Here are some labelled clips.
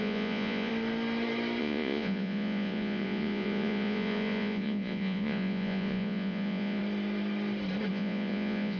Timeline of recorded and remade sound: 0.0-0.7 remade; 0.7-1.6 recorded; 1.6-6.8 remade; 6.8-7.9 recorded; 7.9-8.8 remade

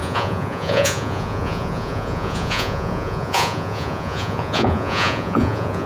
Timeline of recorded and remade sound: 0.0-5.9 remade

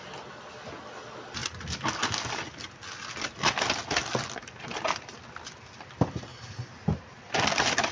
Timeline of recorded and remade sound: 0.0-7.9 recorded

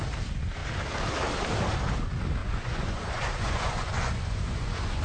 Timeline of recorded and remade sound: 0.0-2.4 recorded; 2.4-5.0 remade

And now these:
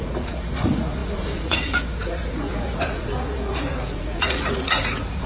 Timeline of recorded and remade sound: 0.0-5.3 remade